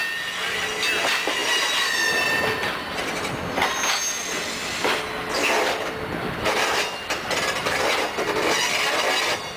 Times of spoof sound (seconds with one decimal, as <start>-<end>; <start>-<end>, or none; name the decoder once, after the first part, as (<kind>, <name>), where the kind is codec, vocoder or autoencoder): none